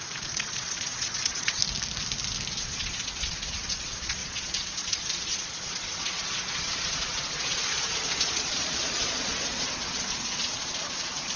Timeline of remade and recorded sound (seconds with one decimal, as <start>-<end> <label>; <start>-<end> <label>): 0.0-1.6 remade; 1.6-2.6 recorded; 2.6-11.4 remade